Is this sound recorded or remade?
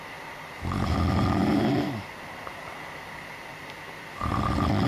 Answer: recorded